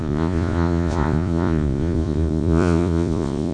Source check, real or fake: fake